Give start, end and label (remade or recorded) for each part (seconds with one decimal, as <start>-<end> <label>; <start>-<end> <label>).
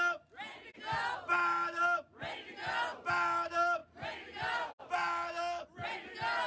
0.0-6.5 recorded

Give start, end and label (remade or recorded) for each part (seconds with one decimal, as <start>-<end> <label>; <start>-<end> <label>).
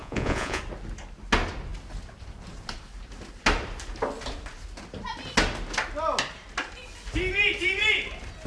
0.0-0.6 remade; 0.6-8.5 recorded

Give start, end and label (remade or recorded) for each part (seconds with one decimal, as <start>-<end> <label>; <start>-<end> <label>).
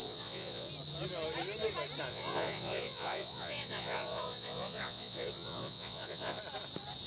0.0-0.7 remade; 0.7-2.1 recorded; 2.1-6.4 remade; 6.4-7.1 recorded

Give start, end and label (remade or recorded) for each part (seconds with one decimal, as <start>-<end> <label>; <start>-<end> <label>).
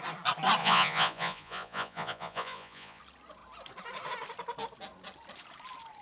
0.0-0.6 recorded; 0.6-3.0 remade; 3.0-6.0 recorded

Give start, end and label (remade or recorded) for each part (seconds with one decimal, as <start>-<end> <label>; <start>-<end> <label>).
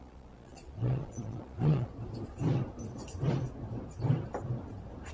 0.0-1.9 remade; 1.9-5.1 recorded